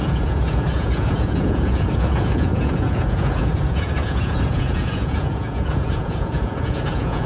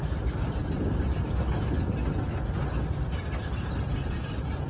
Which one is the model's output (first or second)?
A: first